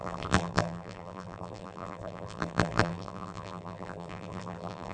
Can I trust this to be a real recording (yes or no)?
no